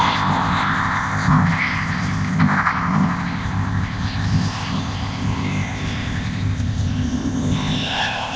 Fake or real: fake